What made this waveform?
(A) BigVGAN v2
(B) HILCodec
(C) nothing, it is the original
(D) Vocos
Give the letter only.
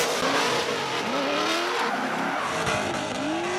C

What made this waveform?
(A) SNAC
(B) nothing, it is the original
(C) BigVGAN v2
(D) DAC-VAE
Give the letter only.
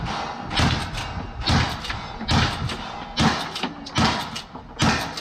B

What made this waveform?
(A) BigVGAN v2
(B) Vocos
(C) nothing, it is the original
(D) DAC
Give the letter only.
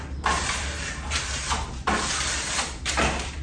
C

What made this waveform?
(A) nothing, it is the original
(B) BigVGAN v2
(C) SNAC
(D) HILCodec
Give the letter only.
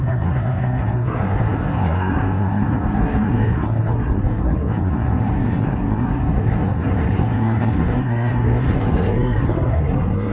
C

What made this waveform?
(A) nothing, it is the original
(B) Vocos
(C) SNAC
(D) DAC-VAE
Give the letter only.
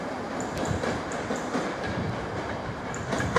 A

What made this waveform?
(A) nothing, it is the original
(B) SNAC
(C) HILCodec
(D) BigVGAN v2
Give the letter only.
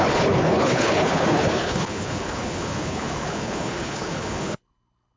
C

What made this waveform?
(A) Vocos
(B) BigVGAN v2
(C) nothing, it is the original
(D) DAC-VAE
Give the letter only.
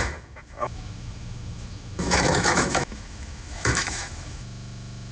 D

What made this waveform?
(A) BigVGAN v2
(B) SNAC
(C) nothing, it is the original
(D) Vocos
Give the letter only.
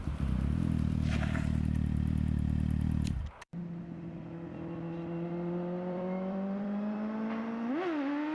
A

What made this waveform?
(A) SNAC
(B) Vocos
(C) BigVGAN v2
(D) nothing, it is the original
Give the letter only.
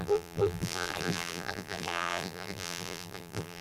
C